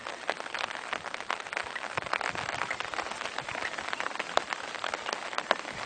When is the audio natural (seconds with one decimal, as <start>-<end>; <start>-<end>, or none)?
0.0-5.9